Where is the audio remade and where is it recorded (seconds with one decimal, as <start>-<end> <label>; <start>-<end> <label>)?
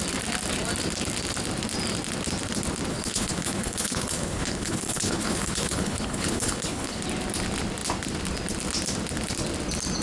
0.0-2.9 recorded; 2.9-7.0 remade; 7.0-10.0 recorded